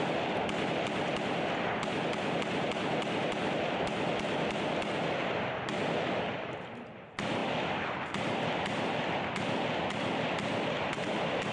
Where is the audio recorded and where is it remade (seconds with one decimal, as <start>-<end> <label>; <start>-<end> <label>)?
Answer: 0.0-11.5 recorded